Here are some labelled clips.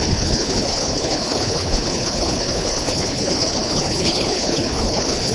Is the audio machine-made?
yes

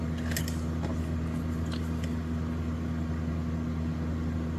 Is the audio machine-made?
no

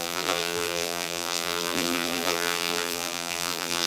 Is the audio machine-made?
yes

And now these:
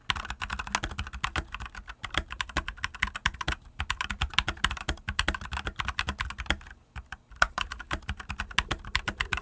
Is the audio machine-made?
no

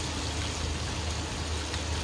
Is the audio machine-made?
no